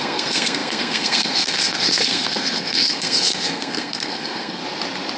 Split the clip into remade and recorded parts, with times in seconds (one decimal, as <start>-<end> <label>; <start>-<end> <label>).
0.0-4.6 remade; 4.6-5.2 recorded